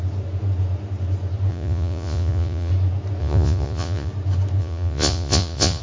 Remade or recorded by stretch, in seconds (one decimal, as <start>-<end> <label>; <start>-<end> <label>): 0.0-1.5 recorded; 1.5-2.7 remade; 2.7-3.2 recorded; 3.2-4.1 remade; 4.1-4.6 recorded; 4.6-5.8 remade